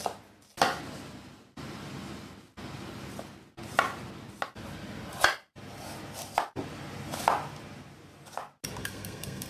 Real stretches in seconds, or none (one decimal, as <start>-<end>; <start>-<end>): 0.0-8.8